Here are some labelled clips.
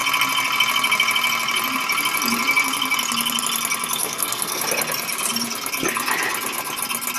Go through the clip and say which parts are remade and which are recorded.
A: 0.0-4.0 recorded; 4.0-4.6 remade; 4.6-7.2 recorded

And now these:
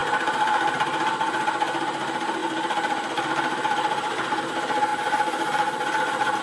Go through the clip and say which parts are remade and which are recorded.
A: 0.0-2.4 recorded; 2.4-4.4 remade; 4.4-4.9 recorded; 4.9-6.4 remade

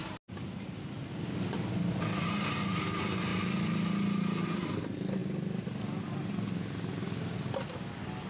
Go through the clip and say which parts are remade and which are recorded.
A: 0.0-8.3 recorded

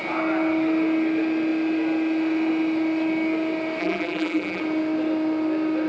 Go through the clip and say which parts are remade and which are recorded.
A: 0.0-3.8 recorded; 3.8-4.6 remade; 4.6-5.9 recorded